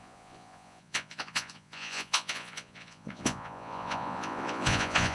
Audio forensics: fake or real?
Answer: fake